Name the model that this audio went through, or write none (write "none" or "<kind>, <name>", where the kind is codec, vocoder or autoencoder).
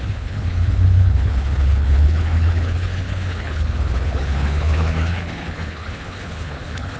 codec, HILCodec